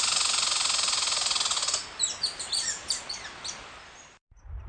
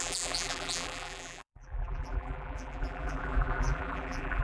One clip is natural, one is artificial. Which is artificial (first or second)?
second